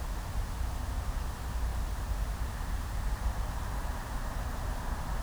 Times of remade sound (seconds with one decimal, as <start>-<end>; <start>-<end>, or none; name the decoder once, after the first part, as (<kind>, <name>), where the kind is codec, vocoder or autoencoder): 1.7-4.8 (vocoder, BigVGAN v2)

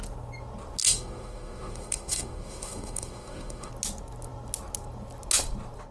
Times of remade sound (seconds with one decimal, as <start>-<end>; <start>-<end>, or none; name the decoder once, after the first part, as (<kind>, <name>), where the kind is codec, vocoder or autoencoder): 0.8-3.7 (autoencoder, DAC-VAE)

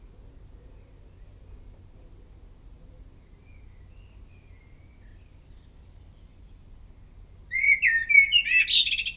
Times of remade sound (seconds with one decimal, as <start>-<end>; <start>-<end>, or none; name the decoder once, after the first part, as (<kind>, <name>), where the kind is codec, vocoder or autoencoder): none

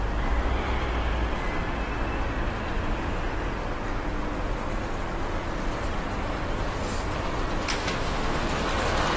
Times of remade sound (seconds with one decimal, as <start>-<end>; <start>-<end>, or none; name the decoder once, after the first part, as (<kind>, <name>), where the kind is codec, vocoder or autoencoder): 7.8-8.4 (autoencoder, DAC-VAE)

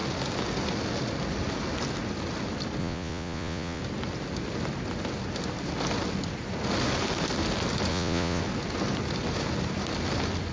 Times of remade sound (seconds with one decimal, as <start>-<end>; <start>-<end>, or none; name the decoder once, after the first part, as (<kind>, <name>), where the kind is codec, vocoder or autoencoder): 2.8-3.8 (vocoder, Vocos); 7.9-8.4